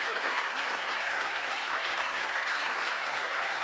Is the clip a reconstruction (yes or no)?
yes